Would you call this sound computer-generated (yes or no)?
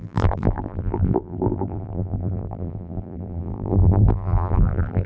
yes